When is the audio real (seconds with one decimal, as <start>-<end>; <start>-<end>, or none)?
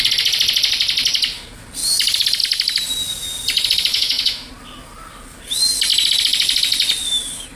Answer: 0.0-3.9; 4.5-7.6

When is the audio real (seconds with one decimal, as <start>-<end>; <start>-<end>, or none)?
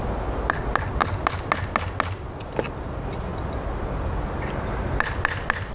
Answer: 0.0-5.7